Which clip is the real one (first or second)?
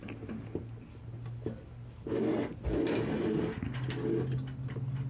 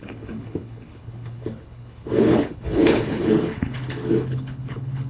first